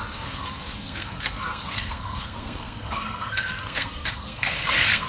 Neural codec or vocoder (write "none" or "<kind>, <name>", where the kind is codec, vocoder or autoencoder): codec, SNAC